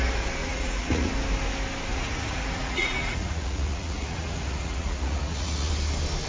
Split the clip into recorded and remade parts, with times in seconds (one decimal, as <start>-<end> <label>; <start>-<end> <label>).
0.0-0.4 recorded; 0.4-1.1 remade; 1.1-1.9 recorded; 1.9-5.7 remade; 5.7-6.3 recorded